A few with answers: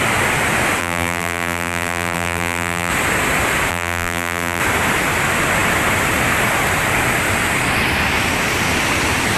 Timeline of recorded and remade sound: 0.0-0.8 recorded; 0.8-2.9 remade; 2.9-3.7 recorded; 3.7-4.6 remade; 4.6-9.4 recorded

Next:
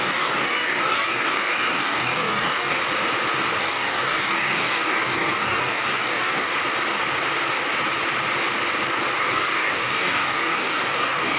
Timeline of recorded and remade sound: 0.0-2.8 remade; 2.8-3.6 recorded; 3.6-6.5 remade; 6.5-9.2 recorded; 9.2-11.4 remade

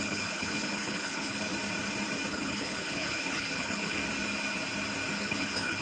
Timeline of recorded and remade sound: 0.0-1.5 remade; 1.5-2.3 recorded; 2.3-4.0 remade; 4.0-5.2 recorded; 5.2-5.8 remade

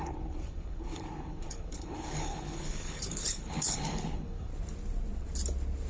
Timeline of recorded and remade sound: 0.0-4.5 remade; 4.5-5.9 recorded